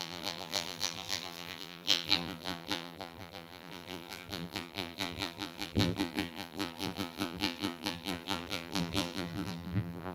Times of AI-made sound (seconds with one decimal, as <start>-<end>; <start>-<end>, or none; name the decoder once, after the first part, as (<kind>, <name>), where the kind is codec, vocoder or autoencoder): 0.0-10.1 (vocoder, BigVGAN v2)